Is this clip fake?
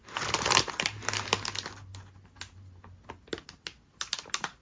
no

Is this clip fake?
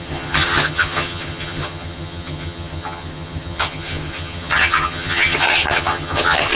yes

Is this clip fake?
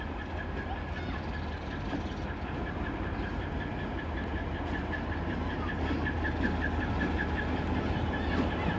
no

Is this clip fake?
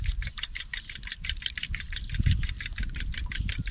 no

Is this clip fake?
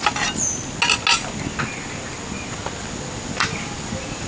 no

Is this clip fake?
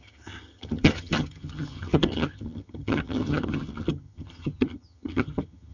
yes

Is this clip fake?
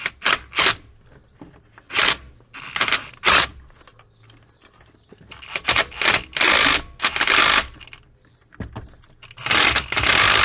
no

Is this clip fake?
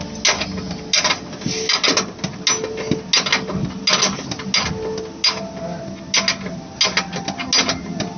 no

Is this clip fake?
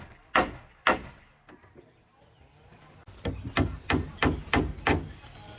no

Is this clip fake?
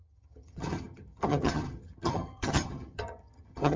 yes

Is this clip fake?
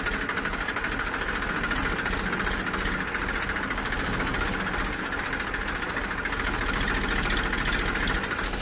no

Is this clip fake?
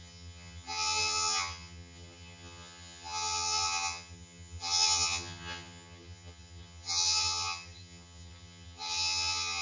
yes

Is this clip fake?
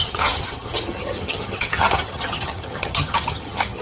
yes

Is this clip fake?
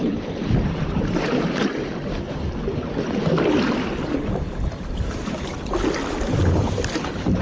no